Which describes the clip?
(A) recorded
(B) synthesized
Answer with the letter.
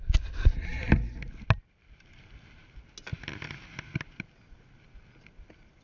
A